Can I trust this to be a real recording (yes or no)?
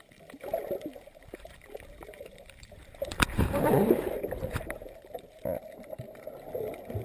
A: no